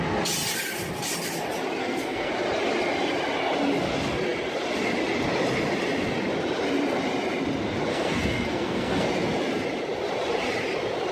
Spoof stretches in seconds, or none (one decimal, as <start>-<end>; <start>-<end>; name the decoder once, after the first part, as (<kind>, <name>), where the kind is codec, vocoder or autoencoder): 1.8-2.3 (codec, SNAC); 7.9-9.1